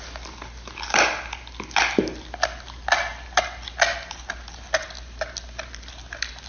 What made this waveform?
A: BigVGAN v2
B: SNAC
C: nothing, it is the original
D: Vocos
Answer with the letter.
C